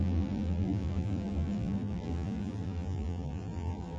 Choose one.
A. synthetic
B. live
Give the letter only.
A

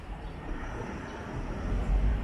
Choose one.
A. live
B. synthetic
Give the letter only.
B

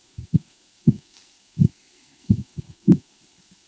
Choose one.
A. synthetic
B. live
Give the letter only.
A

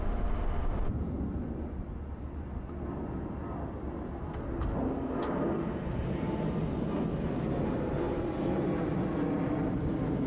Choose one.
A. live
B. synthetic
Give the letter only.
A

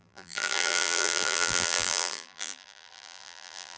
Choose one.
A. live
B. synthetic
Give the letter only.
B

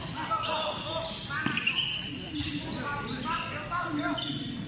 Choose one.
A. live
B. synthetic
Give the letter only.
A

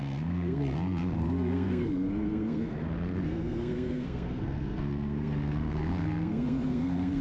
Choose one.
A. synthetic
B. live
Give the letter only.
A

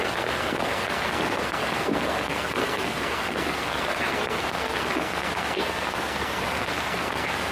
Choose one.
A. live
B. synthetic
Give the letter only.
B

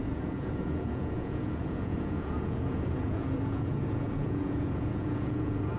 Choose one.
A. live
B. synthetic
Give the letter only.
B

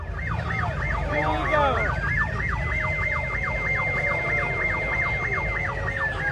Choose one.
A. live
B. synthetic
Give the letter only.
A